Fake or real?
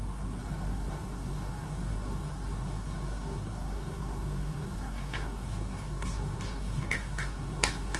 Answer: fake